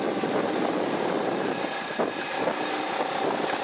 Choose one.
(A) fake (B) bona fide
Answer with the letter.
B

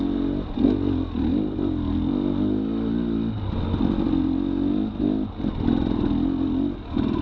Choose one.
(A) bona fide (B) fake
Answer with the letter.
A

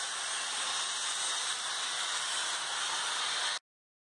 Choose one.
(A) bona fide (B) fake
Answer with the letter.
A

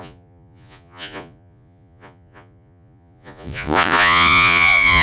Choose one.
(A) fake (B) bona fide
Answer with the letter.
A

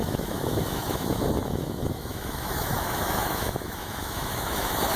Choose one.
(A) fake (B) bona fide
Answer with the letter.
A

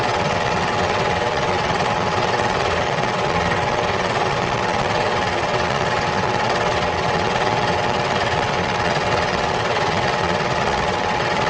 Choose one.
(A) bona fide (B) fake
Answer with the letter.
B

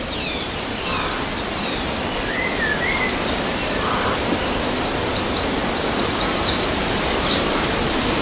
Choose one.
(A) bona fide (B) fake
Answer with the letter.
B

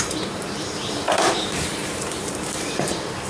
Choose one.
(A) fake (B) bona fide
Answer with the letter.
A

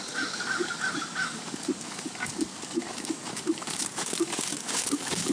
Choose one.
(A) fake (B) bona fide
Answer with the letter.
A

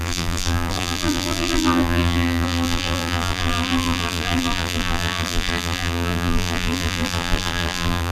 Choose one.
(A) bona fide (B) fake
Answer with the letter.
B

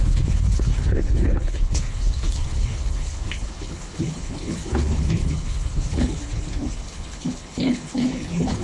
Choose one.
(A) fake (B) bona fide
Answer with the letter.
A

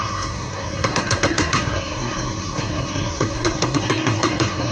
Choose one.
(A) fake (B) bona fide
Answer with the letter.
A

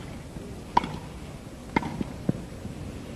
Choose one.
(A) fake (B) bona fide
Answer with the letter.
B